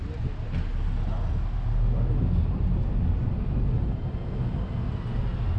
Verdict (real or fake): real